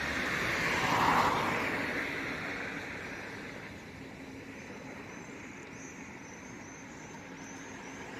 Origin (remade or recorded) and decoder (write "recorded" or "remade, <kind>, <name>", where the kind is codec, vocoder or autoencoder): recorded